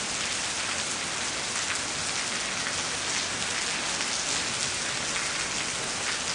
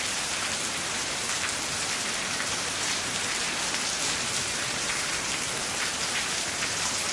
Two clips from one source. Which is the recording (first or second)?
first